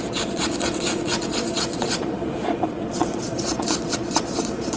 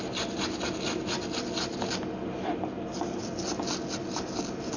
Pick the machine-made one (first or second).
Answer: first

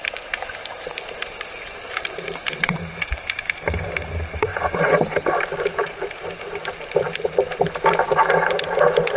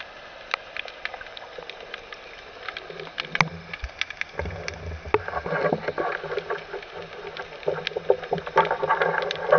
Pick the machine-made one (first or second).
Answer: first